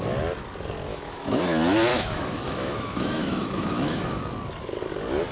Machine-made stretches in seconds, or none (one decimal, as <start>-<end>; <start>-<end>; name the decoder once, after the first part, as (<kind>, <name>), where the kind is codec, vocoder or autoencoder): 0.9-1.4 (autoencoder, DAC-VAE); 1.9-4.2